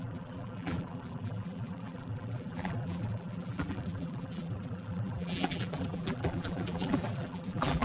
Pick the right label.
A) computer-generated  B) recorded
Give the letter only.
A